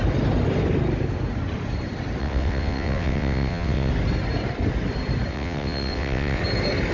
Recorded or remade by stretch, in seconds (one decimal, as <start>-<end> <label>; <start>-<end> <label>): 0.0-2.2 recorded; 2.2-3.9 remade; 3.9-5.3 recorded; 5.3-6.4 remade; 6.4-6.9 recorded